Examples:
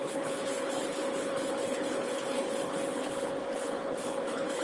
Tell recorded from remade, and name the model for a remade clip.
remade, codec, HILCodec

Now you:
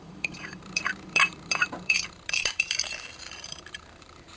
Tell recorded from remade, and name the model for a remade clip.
remade, vocoder, BigVGAN v2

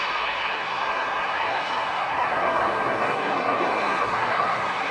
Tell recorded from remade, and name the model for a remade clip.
remade, codec, SNAC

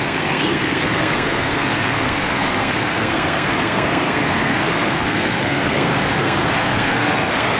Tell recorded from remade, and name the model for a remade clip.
remade, codec, SNAC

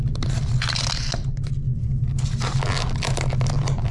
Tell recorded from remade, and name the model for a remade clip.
recorded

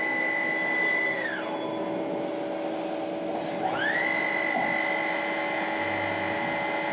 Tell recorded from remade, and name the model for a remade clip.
recorded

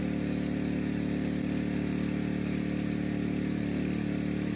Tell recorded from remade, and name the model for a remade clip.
recorded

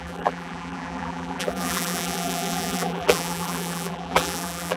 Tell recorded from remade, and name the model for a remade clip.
remade, vocoder, BigVGAN v2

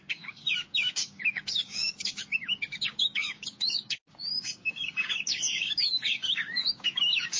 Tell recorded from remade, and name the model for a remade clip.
remade, codec, DAC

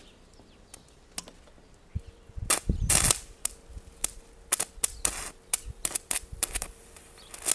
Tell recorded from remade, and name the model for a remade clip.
recorded